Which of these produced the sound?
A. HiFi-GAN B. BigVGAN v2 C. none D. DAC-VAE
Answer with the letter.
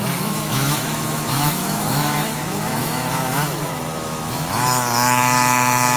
D